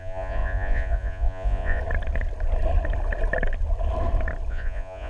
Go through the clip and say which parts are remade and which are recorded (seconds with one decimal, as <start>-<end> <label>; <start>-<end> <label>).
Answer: 0.0-1.8 remade; 1.8-4.5 recorded; 4.5-5.1 remade